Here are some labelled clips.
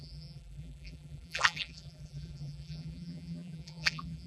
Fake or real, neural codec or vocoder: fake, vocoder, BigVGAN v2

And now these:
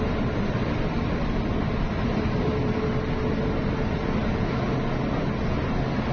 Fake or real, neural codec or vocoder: real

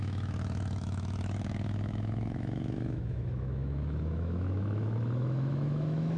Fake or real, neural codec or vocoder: fake, autoencoder, DAC-VAE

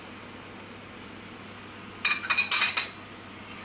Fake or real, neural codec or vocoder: real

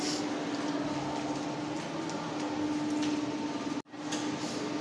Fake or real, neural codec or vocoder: real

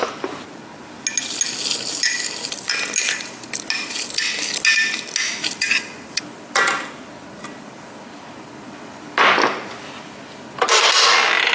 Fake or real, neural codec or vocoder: real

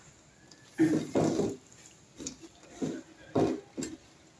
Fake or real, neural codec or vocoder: real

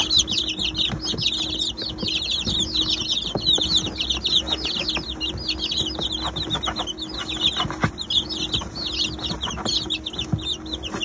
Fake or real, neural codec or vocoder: real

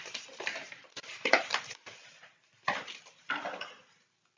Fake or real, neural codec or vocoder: real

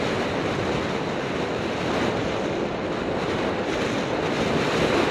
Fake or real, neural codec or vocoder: real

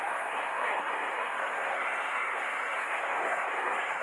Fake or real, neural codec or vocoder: fake, codec, SNAC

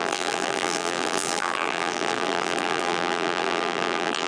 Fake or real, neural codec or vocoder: fake, vocoder, BigVGAN v2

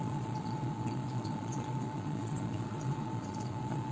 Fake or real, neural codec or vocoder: fake, vocoder, Vocos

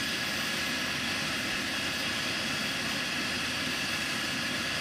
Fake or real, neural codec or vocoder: real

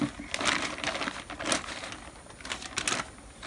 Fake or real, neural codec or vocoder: real